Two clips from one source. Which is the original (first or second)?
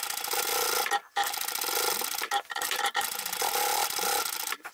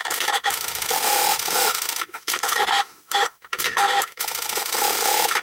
first